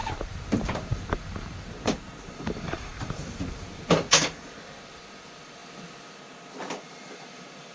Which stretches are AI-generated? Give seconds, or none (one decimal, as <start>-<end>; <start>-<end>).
0.0-5.6; 6.7-7.7

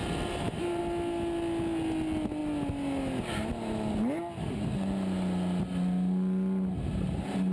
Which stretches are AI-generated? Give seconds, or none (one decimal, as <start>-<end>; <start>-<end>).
0.0-0.8

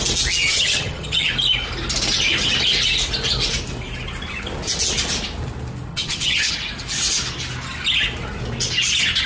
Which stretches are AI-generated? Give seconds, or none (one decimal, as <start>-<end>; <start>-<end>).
0.4-1.3; 5.9-6.5

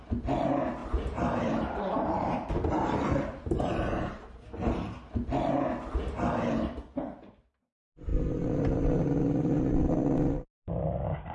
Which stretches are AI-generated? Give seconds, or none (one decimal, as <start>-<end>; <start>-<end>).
0.8-4.7; 8.1-9.0

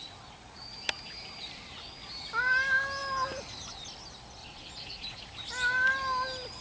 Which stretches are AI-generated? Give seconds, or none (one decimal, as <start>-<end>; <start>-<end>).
4.4-5.2

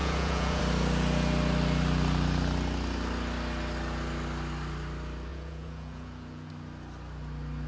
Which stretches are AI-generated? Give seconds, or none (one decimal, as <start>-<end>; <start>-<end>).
0.0-0.6; 5.3-6.5